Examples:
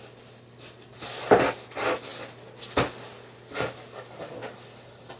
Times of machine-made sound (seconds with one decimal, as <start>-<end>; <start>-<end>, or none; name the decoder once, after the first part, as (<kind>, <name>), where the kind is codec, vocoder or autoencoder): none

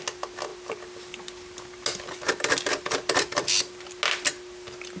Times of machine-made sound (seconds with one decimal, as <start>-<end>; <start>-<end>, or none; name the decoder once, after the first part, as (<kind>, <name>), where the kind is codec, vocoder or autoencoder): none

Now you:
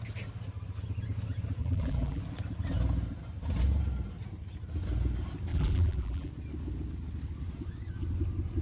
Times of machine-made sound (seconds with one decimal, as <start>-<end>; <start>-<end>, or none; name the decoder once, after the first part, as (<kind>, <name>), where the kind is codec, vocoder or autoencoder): 1.6-2.2 (vocoder, BigVGAN v2); 5.5-6.3

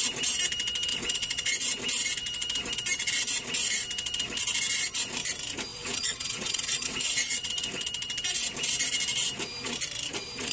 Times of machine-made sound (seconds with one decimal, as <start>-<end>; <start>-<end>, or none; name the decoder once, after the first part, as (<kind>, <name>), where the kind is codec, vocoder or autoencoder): 0.9-1.5 (vocoder, WaveNeXt); 5.7-7.5